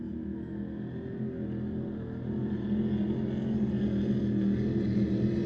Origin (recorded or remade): recorded